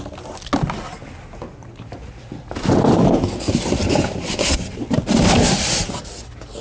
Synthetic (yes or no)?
no